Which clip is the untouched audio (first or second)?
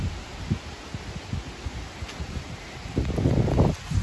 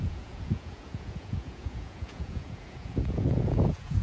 first